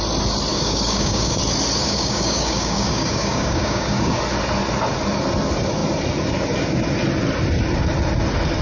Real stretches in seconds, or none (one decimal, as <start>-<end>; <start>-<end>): 0.0-0.5; 1.4-1.8; 4.2-8.6